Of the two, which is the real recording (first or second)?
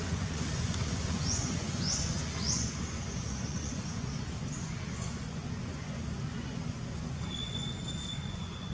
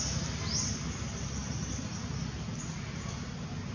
second